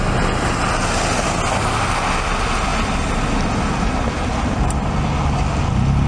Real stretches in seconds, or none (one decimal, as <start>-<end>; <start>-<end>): 0.0-6.1